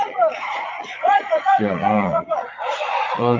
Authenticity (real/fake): fake